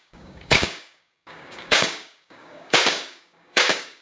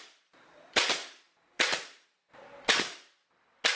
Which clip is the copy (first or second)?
first